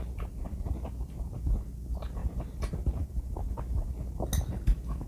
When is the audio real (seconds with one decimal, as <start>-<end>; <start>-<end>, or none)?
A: 0.0-5.1